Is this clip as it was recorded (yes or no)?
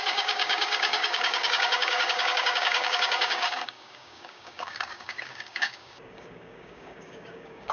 no